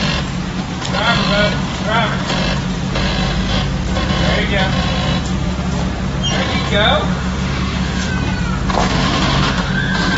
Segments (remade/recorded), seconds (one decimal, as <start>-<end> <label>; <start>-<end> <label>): 0.0-7.1 recorded; 7.1-8.1 remade; 8.1-8.9 recorded; 8.9-9.7 remade; 9.7-10.2 recorded